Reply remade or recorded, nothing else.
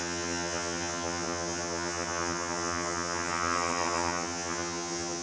remade